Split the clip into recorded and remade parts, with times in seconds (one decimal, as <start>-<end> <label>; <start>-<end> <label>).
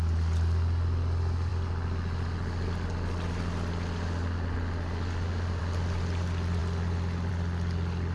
0.0-8.1 recorded